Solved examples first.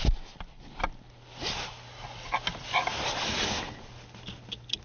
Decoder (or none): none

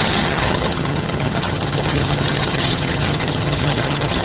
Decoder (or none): vocoder, HiFi-GAN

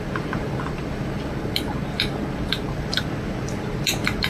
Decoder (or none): none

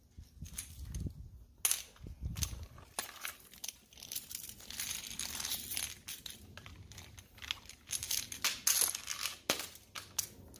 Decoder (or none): none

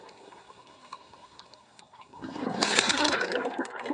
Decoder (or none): codec, SNAC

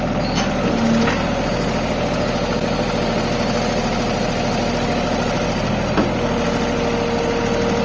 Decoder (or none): none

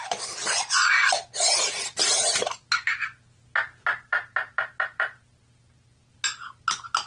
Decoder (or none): none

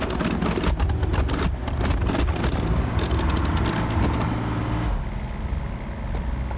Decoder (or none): none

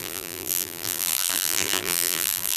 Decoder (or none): vocoder, BigVGAN v2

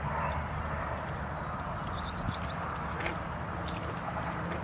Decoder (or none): none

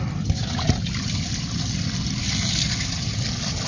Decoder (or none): none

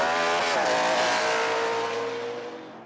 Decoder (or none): none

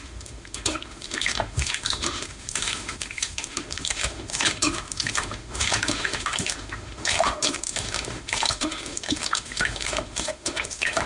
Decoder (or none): autoencoder, DAC-VAE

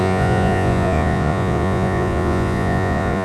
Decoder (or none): vocoder, Vocos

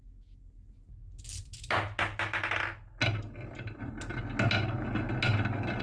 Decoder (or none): none